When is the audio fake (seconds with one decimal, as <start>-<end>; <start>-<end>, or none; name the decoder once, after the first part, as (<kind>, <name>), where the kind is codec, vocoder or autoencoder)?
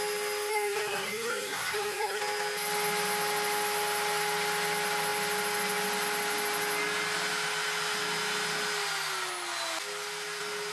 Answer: 0.5-2.2 (codec, SNAC)